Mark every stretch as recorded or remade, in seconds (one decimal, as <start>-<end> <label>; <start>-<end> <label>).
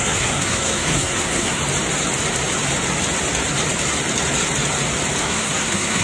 0.0-1.6 remade; 1.6-5.2 recorded; 5.2-6.0 remade